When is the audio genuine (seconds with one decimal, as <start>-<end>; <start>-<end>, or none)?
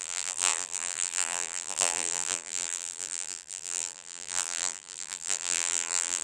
none